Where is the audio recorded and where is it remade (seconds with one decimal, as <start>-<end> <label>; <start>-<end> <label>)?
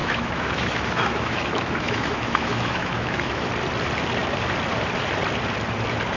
0.0-3.5 remade; 3.5-6.2 recorded